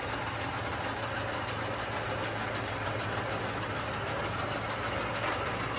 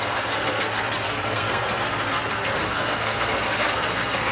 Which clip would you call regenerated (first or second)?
second